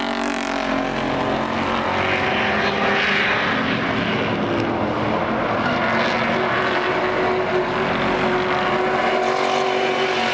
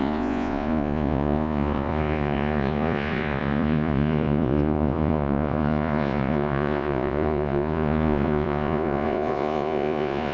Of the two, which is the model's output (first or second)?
second